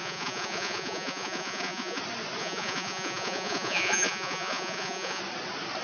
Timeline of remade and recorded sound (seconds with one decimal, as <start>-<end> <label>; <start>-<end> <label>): 0.0-2.0 remade; 2.0-2.4 recorded; 2.4-5.2 remade; 5.2-5.8 recorded